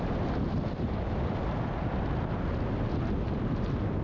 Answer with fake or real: real